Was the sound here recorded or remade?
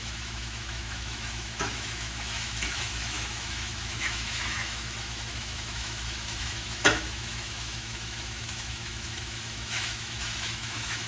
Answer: remade